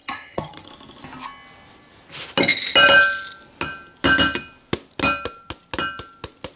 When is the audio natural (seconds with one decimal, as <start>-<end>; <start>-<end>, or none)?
0.7-6.6